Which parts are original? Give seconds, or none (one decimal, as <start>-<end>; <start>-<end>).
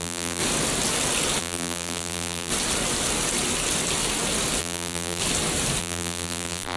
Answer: 0.4-1.4; 2.5-4.6; 5.2-5.8